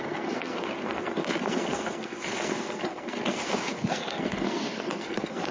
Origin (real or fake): fake